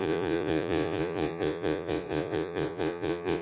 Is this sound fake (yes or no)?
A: yes